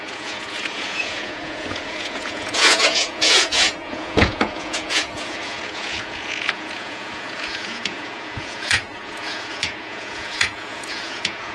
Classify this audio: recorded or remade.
remade